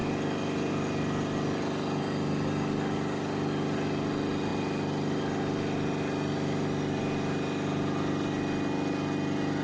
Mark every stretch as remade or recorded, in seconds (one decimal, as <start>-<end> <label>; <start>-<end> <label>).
0.0-9.6 recorded